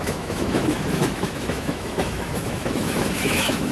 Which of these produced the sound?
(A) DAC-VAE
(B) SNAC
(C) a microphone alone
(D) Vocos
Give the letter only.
A